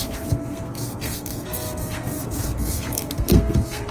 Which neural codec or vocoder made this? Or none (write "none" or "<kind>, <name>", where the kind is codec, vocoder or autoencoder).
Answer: codec, SNAC